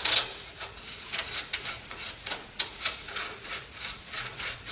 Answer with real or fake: fake